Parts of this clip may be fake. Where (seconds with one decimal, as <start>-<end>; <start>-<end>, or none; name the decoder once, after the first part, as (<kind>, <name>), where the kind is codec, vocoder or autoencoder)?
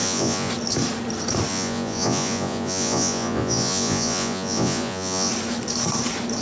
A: 0.0-0.5 (vocoder, Vocos); 1.5-5.3